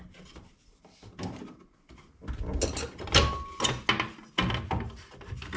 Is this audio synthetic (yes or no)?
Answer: no